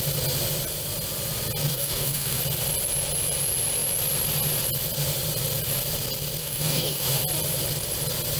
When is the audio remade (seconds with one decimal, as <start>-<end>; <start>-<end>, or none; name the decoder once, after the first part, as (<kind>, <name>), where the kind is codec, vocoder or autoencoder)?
1.7-2.4 (codec, DAC); 6.4-7.2